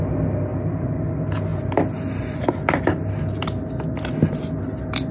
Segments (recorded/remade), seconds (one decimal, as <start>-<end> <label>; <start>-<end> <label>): 0.0-5.1 recorded

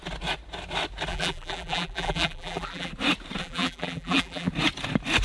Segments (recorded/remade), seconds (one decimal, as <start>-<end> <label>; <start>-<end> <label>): 0.0-1.1 recorded; 1.1-2.9 remade; 2.9-3.4 recorded; 3.4-4.5 remade; 4.5-5.2 recorded

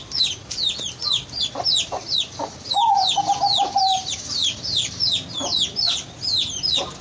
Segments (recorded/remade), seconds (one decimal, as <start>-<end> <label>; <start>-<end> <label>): 0.0-7.0 recorded